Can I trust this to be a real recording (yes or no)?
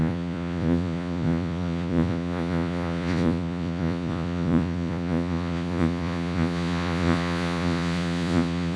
no